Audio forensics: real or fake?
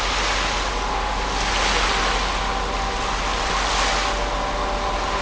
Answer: real